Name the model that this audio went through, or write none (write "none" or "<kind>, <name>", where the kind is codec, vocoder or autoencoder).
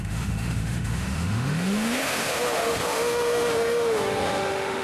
autoencoder, DAC-VAE